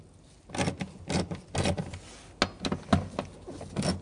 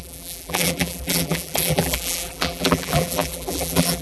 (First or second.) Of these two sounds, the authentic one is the first